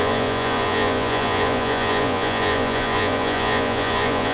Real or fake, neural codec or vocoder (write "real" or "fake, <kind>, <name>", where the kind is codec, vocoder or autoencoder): fake, vocoder, Vocos